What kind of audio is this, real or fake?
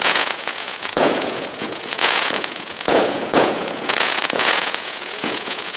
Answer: fake